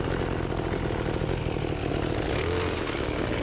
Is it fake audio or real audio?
real